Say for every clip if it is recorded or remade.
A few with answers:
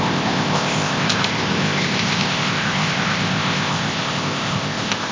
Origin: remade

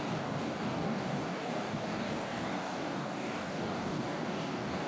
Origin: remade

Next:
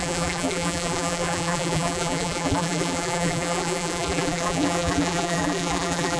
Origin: remade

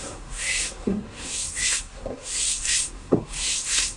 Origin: remade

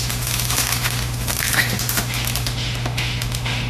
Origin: remade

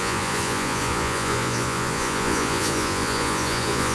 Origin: remade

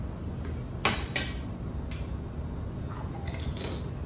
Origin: recorded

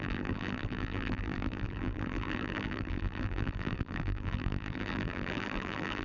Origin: remade